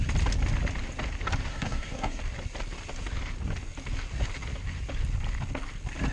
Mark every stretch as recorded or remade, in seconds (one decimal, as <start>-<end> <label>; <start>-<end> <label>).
0.0-1.5 recorded; 1.5-2.2 remade; 2.2-6.1 recorded